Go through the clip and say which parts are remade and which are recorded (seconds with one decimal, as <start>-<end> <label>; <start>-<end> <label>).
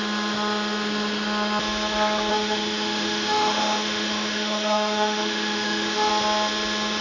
0.0-2.3 recorded; 2.3-6.1 remade; 6.1-7.0 recorded